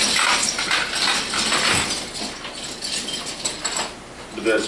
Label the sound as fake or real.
real